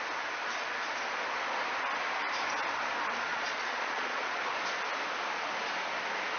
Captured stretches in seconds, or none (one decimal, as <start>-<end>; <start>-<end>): 0.0-3.3; 4.4-6.4